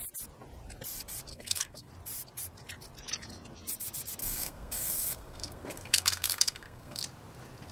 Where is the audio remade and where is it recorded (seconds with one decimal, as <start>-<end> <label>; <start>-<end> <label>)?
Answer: 0.0-1.3 recorded; 1.3-1.9 remade; 1.9-4.2 recorded; 4.2-7.0 remade; 7.0-7.7 recorded